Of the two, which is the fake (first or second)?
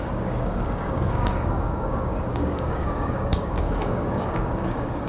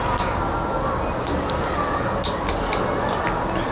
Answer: first